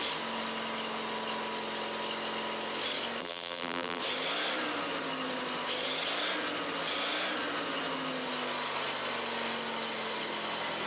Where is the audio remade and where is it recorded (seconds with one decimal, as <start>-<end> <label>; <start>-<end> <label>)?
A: 0.0-3.2 recorded; 3.2-4.0 remade; 4.0-10.9 recorded

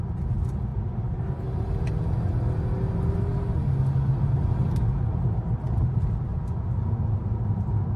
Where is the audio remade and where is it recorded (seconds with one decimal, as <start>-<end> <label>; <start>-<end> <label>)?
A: 0.0-8.0 recorded

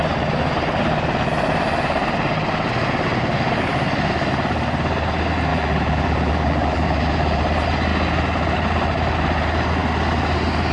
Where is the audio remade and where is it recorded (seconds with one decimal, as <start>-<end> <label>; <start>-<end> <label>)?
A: 0.0-5.5 recorded; 5.5-7.4 remade; 7.4-10.7 recorded

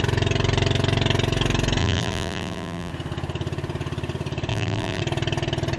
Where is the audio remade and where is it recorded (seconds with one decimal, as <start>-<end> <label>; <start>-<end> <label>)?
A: 0.0-1.8 recorded; 1.8-2.9 remade; 2.9-4.5 recorded; 4.5-5.0 remade; 5.0-5.8 recorded